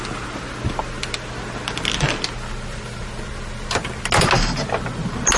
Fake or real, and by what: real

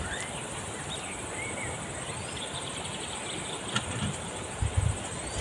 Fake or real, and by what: fake, vocoder, BigVGAN v2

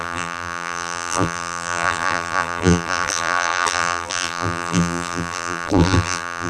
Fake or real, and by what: fake, vocoder, BigVGAN v2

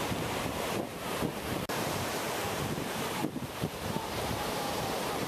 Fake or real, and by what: fake, vocoder, BigVGAN v2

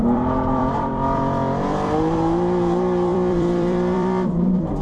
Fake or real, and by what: fake, vocoder, BigVGAN v2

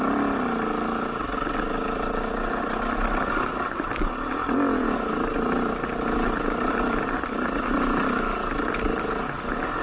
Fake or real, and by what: fake, vocoder, BigVGAN v2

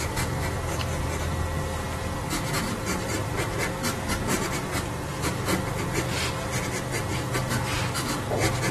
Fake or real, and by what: real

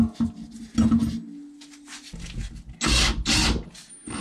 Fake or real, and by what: real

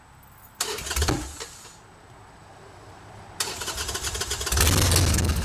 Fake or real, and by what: real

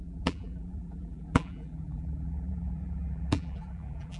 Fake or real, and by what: fake, vocoder, BigVGAN v2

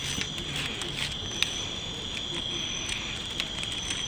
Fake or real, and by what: fake, vocoder, BigVGAN v2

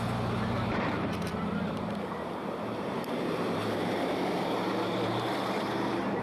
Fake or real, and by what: fake, vocoder, BigVGAN v2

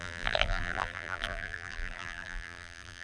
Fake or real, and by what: fake, vocoder, BigVGAN v2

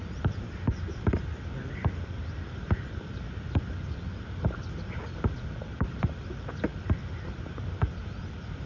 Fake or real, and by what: fake, vocoder, BigVGAN v2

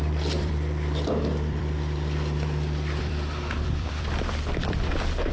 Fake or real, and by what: fake, vocoder, BigVGAN v2